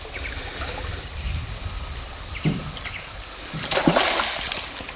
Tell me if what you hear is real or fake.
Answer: real